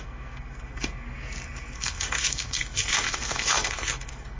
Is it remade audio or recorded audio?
remade